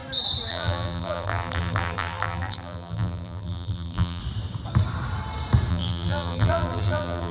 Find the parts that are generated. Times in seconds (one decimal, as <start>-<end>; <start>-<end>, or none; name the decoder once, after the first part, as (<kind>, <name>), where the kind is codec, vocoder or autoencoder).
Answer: 0.5-4.2 (vocoder, BigVGAN v2); 5.7-7.3